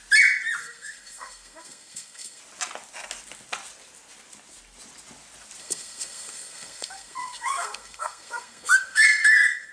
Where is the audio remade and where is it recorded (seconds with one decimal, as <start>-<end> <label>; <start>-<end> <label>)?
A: 0.0-0.6 recorded; 0.6-2.4 remade; 2.4-5.6 recorded; 5.6-9.7 remade